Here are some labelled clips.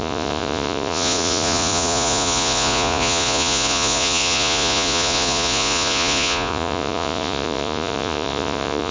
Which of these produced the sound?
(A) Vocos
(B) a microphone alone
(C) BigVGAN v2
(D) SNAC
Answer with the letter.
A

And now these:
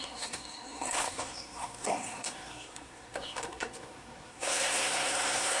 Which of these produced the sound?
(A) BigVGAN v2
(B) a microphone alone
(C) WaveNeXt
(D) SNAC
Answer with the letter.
D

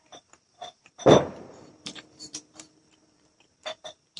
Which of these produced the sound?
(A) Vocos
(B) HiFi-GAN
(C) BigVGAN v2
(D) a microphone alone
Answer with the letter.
C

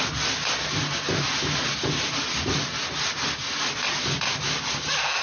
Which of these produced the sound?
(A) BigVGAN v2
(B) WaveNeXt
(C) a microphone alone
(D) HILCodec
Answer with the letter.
C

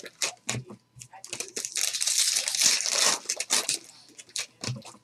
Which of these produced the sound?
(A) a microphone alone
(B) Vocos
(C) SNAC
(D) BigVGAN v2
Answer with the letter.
A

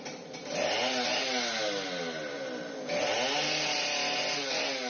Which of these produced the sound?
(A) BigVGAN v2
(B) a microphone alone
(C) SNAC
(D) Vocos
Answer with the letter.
B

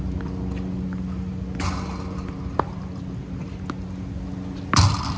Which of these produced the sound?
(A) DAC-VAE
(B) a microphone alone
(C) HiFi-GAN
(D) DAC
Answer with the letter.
B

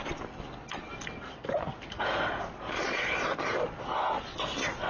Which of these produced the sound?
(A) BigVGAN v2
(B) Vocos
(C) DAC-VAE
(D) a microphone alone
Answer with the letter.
D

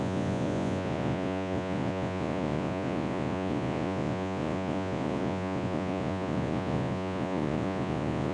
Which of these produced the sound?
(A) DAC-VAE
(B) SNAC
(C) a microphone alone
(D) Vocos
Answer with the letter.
D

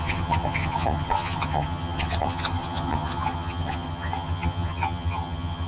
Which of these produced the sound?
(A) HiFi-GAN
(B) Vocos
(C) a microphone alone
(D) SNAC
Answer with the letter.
A